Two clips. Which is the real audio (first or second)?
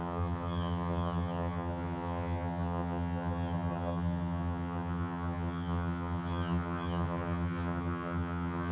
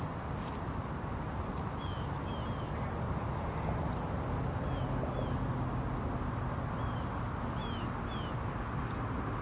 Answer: second